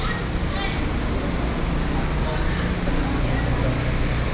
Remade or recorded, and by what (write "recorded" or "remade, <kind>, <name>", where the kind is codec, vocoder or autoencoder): recorded